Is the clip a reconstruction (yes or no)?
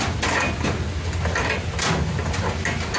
no